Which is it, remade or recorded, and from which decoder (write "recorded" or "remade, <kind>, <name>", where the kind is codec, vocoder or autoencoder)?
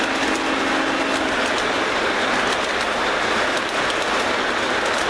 recorded